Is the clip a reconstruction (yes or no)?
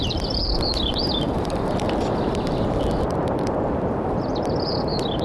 yes